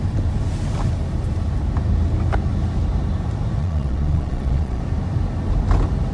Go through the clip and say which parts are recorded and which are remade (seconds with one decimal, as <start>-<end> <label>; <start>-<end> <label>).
0.0-3.6 recorded; 3.6-4.8 remade; 4.8-6.1 recorded